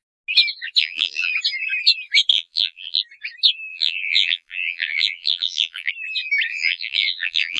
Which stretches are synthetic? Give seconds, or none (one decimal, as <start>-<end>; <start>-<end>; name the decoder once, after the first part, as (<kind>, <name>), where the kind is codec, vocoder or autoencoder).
0.8-1.3 (vocoder, BigVGAN v2); 2.3-3.0; 3.7-5.9; 6.5-7.6